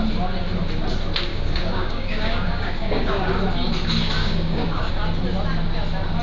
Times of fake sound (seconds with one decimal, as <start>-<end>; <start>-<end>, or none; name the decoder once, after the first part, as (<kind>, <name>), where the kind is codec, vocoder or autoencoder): 1.3-3.3 (codec, DAC); 4.2-4.9